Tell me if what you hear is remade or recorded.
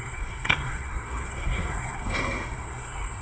remade